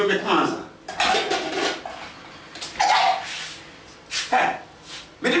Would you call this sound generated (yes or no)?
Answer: no